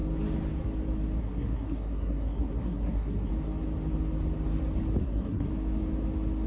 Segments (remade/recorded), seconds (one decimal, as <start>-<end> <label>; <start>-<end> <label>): 0.0-1.2 recorded; 1.2-3.3 remade; 3.3-5.0 recorded; 5.0-5.5 remade; 5.5-6.5 recorded